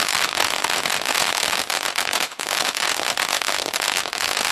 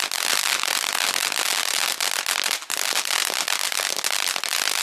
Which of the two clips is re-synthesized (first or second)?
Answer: first